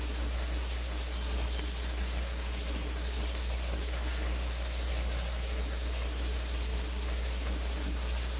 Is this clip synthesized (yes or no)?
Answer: yes